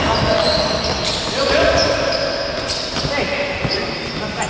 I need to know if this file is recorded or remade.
recorded